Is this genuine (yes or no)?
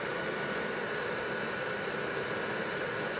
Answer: yes